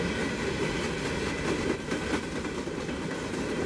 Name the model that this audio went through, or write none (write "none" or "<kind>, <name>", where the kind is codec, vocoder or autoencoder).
none